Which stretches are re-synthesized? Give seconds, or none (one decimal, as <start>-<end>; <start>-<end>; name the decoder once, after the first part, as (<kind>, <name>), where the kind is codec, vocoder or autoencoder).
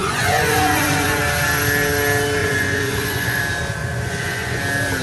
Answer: 0.0-1.2 (vocoder, Vocos); 2.4-3.4; 3.8-4.6